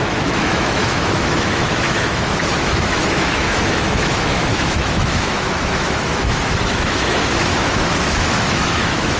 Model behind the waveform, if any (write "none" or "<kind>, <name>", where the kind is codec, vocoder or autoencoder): autoencoder, DAC-VAE